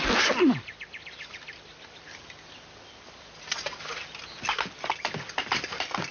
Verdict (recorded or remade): recorded